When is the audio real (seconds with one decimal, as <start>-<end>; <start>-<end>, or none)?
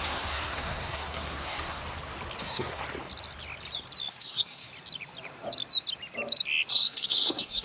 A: 1.8-2.4; 2.8-4.1; 4.7-6.7